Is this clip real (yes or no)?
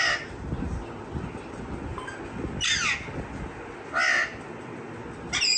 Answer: yes